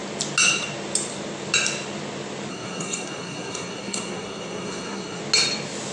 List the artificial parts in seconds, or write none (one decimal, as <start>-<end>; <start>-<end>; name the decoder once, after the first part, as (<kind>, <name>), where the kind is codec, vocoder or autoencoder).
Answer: 2.5-5.2 (codec, SNAC)